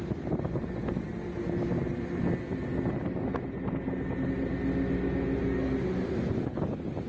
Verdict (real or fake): real